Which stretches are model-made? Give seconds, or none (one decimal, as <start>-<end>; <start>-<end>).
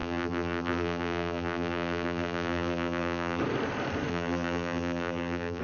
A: 0.0-3.4; 4.1-5.6